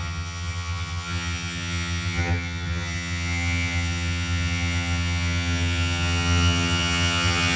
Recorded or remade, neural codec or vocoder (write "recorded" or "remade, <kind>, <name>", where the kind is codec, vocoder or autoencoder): remade, vocoder, HiFi-GAN